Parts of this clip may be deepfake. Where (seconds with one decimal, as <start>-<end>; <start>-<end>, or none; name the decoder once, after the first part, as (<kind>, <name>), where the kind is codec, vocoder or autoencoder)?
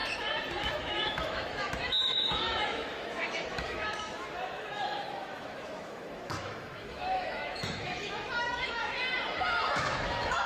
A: 0.6-8.8 (autoencoder, DAC-VAE); 9.6-10.5